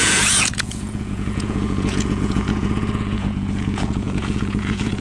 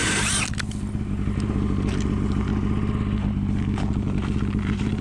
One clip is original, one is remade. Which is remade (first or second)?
first